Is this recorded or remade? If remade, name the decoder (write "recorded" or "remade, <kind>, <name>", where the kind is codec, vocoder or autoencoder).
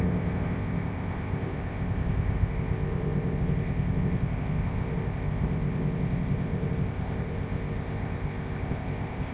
remade, codec, ZipCodec